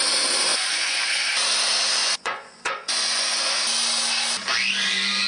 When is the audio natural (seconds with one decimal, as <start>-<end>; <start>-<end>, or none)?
0.0-0.5; 1.1-2.0; 3.6-5.3